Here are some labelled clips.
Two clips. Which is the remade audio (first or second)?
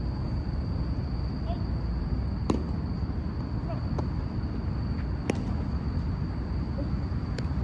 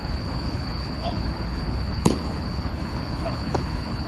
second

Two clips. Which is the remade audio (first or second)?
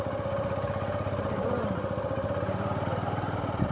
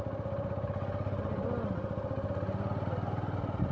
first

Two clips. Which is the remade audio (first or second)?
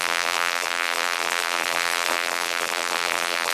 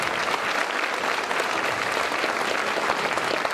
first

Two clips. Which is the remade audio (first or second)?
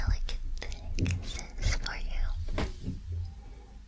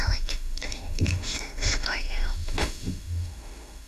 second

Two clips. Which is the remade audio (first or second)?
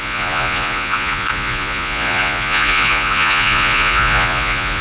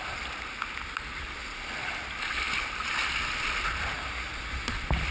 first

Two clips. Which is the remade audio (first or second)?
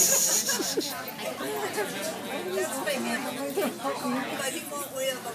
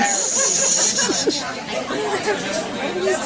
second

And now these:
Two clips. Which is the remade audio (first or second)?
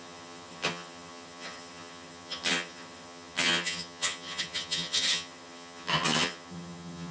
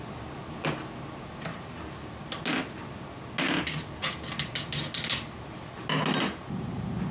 first